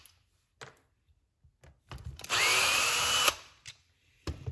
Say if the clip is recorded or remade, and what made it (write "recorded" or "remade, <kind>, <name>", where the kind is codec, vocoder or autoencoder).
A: recorded